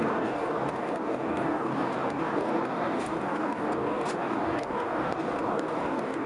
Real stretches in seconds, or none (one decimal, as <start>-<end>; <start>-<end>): none